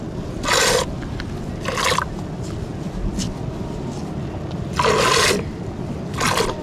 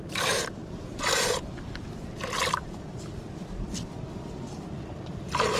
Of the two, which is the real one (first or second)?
first